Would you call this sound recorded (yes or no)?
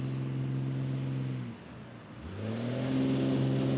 yes